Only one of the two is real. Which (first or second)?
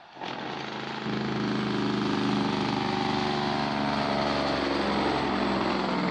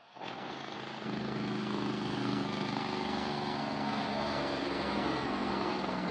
first